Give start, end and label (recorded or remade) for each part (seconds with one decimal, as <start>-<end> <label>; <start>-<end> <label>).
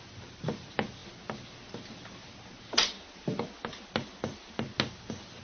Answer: 0.0-5.4 recorded